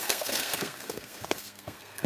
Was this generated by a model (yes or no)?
yes